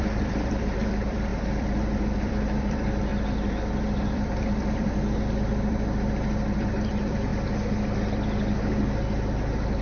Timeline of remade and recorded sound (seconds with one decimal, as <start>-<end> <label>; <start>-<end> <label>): 0.0-3.1 remade; 3.1-4.0 recorded; 4.0-7.3 remade; 7.3-9.8 recorded